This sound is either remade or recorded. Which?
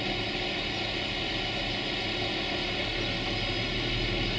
recorded